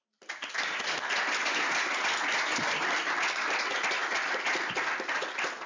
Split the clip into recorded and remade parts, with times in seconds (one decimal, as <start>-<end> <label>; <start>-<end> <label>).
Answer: 0.0-5.7 recorded